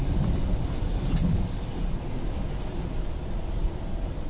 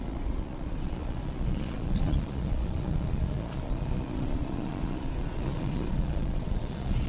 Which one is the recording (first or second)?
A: first